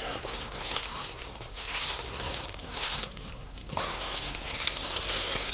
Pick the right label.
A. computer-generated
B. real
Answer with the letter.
A